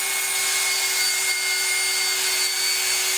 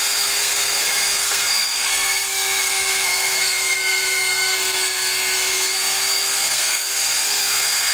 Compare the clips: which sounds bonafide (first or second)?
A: first